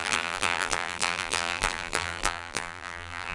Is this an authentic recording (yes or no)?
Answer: no